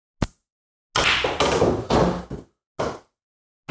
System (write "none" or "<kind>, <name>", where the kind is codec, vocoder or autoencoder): none